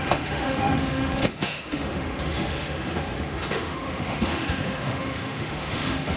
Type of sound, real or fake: fake